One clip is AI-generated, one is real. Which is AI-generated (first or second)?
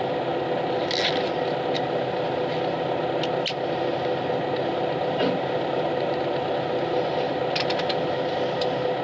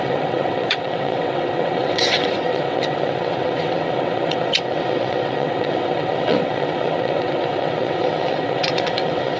second